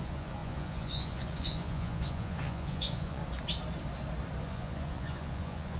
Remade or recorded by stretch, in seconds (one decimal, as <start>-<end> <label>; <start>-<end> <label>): 0.0-3.2 remade; 3.2-4.4 recorded; 4.4-5.8 remade